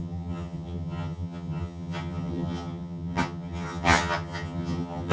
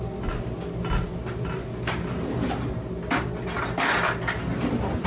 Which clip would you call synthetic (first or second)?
first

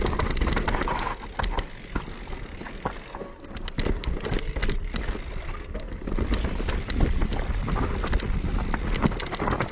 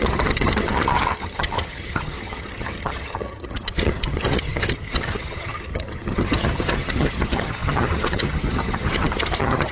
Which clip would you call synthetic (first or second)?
second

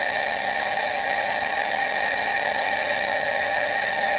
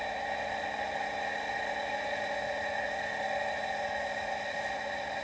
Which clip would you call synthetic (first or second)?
first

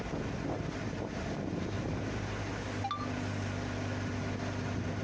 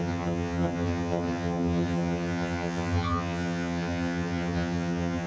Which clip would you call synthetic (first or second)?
second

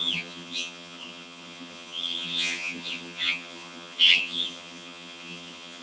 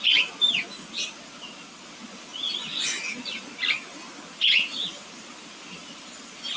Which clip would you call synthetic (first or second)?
first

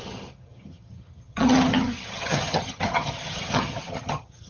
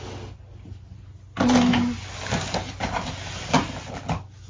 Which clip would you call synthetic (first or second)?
first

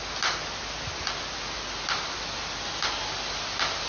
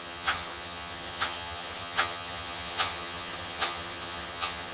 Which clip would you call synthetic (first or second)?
second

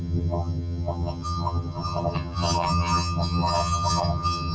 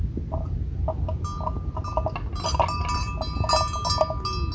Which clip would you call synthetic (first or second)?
first